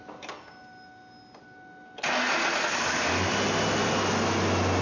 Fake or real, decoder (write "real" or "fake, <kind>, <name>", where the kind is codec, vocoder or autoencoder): real